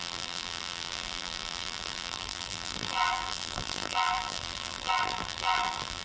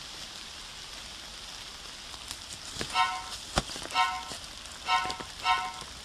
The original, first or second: second